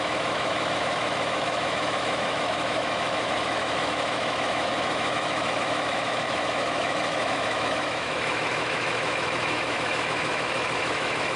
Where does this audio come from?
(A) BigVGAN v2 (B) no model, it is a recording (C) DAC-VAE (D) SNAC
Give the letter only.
C